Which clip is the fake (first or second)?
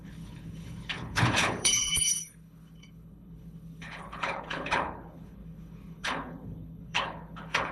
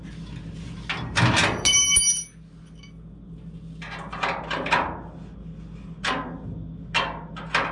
first